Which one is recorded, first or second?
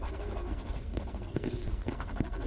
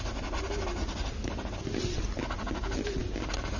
second